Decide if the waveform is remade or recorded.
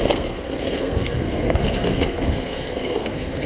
remade